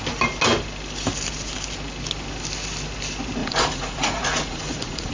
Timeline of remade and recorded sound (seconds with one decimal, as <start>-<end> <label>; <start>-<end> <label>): 0.0-3.4 recorded; 3.4-5.1 remade